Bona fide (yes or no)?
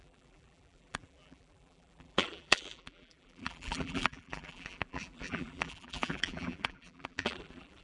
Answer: no